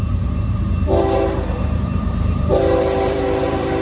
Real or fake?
fake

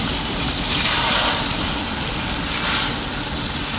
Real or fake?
fake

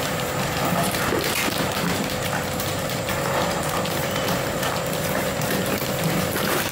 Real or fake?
fake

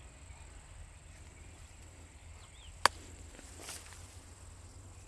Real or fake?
real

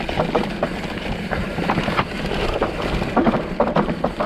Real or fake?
fake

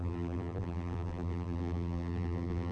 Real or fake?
fake